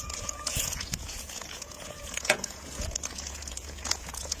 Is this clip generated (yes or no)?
yes